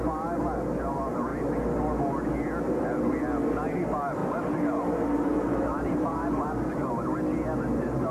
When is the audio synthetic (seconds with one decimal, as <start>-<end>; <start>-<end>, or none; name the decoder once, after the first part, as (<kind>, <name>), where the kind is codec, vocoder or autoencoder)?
4.2-6.9 (vocoder, BigVGAN v2)